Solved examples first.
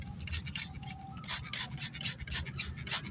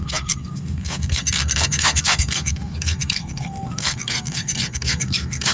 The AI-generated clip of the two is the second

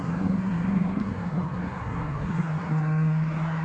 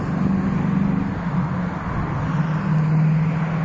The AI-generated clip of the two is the first